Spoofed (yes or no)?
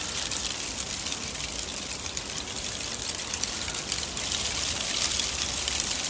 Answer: yes